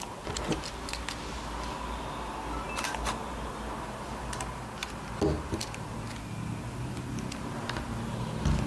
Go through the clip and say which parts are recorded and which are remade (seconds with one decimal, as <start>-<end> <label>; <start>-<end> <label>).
0.0-8.7 recorded